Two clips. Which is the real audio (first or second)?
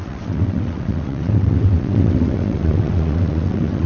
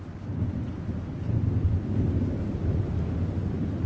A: second